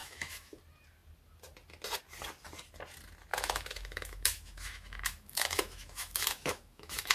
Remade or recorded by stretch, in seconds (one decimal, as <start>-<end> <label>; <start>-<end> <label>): 0.0-0.6 remade; 0.6-3.3 recorded; 3.3-7.1 remade